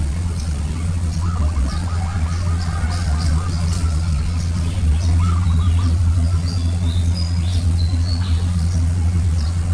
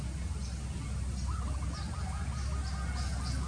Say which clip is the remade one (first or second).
first